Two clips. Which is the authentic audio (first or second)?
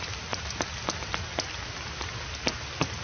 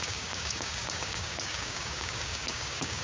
first